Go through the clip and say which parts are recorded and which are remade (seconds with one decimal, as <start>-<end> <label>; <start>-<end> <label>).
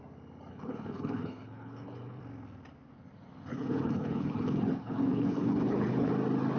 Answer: 0.0-0.5 recorded; 0.5-2.2 remade; 2.2-3.5 recorded; 3.5-6.1 remade; 6.1-6.6 recorded